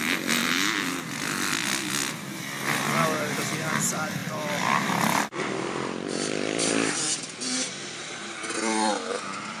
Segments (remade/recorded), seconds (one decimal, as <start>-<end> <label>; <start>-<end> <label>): 0.0-0.4 recorded; 0.4-1.0 remade; 1.0-4.2 recorded; 4.2-8.9 remade; 8.9-9.6 recorded